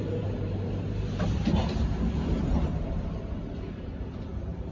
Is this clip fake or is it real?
fake